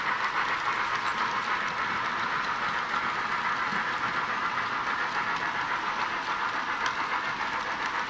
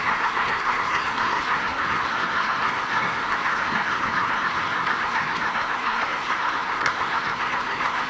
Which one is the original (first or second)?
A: first